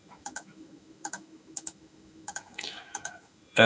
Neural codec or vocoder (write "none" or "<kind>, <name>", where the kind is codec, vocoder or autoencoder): autoencoder, DAC-VAE